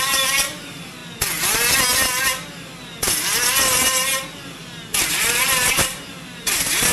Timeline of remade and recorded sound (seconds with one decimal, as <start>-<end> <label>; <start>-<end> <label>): 0.0-1.0 remade; 1.0-5.1 recorded; 5.1-6.9 remade